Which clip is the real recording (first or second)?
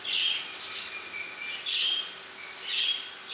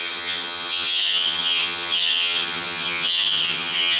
first